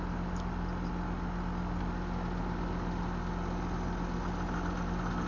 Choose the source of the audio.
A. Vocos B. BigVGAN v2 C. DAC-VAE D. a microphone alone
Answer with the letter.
D